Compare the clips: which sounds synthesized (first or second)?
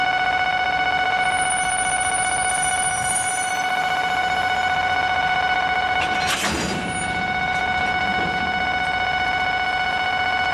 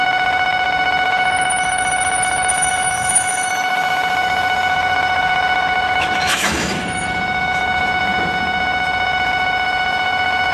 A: second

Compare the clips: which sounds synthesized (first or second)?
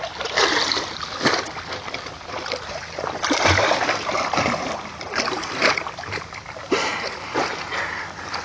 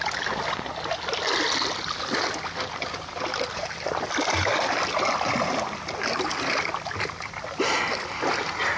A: first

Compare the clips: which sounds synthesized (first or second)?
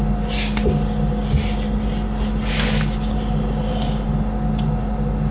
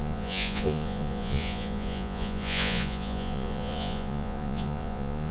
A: second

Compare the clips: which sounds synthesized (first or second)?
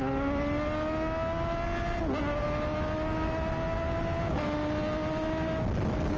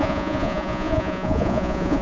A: second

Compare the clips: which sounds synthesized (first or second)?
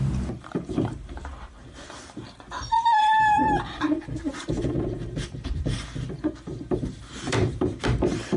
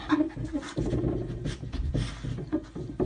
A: first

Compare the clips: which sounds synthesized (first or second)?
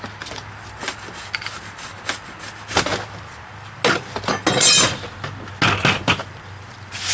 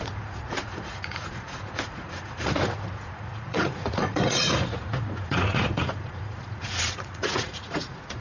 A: second